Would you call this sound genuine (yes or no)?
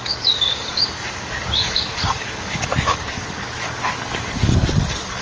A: no